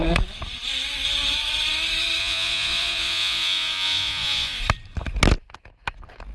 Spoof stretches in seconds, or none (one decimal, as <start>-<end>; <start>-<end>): 2.2-4.6